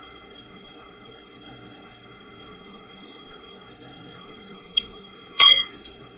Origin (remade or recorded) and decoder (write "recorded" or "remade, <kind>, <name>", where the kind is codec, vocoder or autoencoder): remade, codec, SNAC